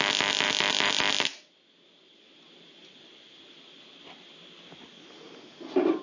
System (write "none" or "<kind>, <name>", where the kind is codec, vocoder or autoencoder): none